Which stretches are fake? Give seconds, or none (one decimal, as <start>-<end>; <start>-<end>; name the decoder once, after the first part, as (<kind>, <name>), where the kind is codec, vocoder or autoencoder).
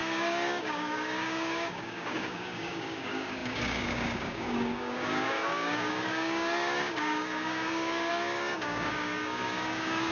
0.0-10.1 (codec, DAC)